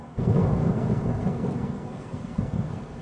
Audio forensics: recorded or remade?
remade